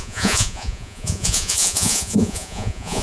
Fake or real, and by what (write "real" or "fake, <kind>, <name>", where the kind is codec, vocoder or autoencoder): fake, vocoder, Vocos